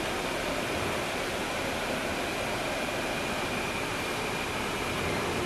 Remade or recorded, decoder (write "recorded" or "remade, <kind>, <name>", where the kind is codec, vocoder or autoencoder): recorded